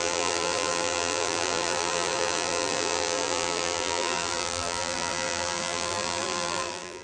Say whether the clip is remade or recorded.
remade